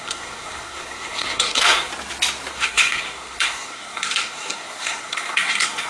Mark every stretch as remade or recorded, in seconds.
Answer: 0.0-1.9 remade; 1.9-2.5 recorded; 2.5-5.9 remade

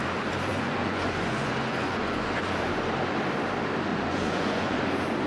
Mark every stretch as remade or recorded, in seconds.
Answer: 0.0-0.5 recorded; 0.5-2.6 remade; 2.6-3.9 recorded; 3.9-4.8 remade; 4.8-5.3 recorded

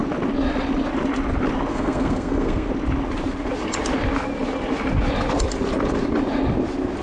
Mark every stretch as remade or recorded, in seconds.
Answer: 0.0-1.7 recorded; 1.7-2.7 remade; 2.7-7.0 recorded

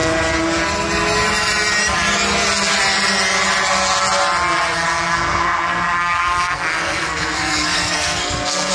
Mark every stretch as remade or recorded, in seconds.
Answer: 0.0-5.1 recorded; 5.1-8.7 remade

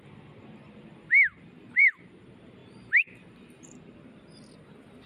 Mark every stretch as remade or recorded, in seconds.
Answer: 0.0-0.4 recorded; 0.4-1.9 remade; 1.9-2.6 recorded; 2.6-4.0 remade; 4.0-5.1 recorded

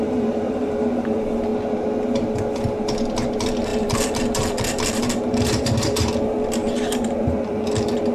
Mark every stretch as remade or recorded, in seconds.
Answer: 0.0-1.5 remade; 1.5-3.3 recorded; 3.3-8.1 remade